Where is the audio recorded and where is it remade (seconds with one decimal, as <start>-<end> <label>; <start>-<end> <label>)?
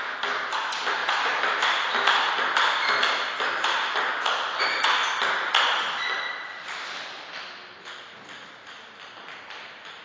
0.0-10.0 recorded